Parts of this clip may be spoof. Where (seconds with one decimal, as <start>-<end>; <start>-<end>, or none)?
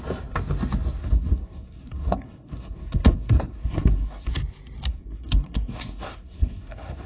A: 1.0-4.3; 4.9-7.1